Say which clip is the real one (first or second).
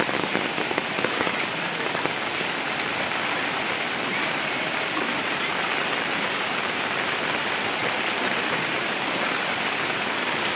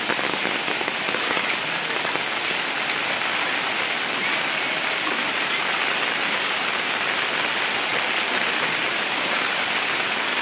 second